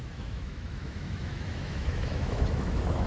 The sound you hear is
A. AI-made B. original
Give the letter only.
A